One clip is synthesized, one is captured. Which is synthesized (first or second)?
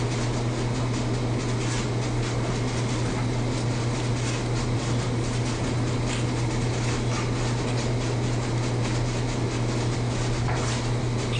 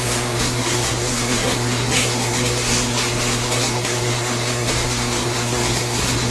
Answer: second